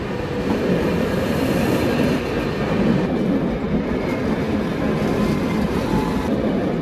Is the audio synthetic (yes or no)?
no